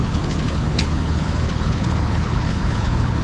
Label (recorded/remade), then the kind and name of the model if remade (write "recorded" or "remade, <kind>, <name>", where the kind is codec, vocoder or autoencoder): remade, codec, HILCodec